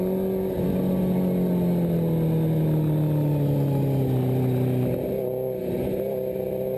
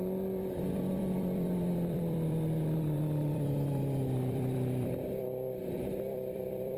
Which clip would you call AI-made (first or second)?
second